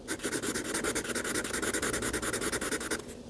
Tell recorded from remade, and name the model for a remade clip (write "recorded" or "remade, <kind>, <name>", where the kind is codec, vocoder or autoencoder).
recorded